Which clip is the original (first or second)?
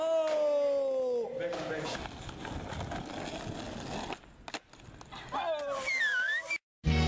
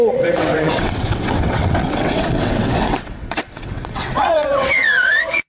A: first